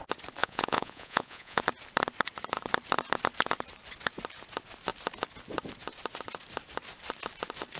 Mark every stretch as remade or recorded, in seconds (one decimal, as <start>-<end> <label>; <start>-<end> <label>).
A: 0.0-0.4 recorded; 0.4-1.6 remade; 1.6-7.8 recorded